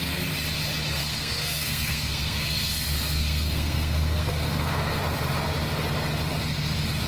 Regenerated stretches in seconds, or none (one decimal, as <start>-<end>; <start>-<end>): 1.0-5.0